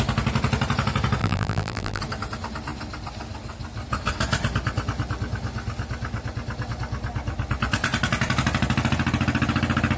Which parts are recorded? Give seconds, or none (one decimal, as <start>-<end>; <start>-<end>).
0.0-1.2; 2.0-10.0